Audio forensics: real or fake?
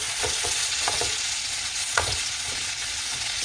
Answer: fake